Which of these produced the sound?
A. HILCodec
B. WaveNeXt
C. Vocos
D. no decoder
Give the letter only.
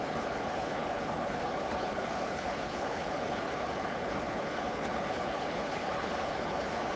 A